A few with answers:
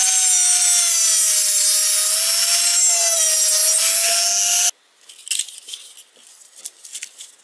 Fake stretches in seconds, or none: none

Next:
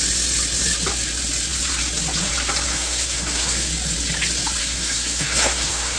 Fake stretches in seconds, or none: 2.7-3.7; 4.6-6.0